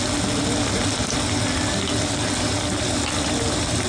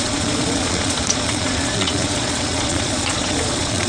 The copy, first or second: second